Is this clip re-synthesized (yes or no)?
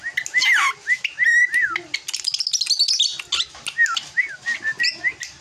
no